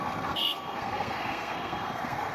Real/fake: fake